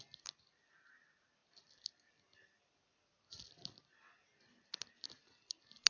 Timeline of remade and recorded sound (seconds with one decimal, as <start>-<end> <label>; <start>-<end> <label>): 0.0-1.4 recorded; 1.4-4.9 remade; 4.9-5.9 recorded